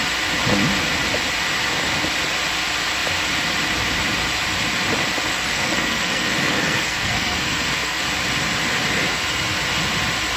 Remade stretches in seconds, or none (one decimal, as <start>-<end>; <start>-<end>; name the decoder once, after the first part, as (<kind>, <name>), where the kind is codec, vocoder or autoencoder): 5.3-8.0 (codec, SNAC)